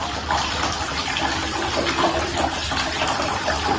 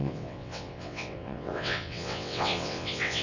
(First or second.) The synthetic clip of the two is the second